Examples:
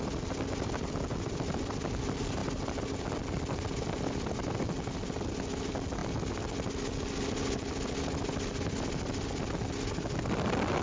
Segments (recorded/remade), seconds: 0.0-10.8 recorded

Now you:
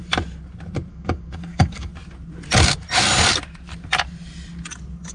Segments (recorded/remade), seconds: 0.0-0.9 recorded; 0.9-1.9 remade; 1.9-5.1 recorded